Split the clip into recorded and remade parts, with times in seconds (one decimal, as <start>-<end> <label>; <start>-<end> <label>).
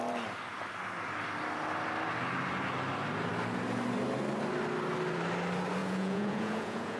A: 0.0-5.8 recorded; 5.8-7.0 remade